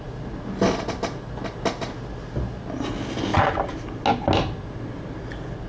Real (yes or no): yes